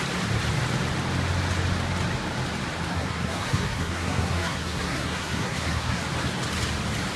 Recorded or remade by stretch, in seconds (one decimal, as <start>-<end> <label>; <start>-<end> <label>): 0.0-2.9 recorded; 2.9-6.0 remade; 6.0-7.2 recorded